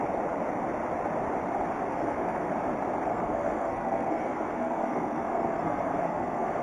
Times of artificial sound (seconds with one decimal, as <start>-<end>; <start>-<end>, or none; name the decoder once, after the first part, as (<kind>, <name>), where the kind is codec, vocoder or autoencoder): 1.9-2.5 (codec, SNAC); 3.1-6.6